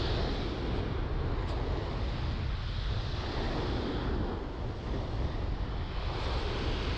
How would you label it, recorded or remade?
recorded